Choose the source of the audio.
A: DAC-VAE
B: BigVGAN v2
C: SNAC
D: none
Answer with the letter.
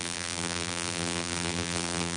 B